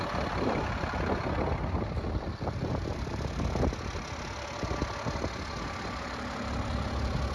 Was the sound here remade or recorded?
recorded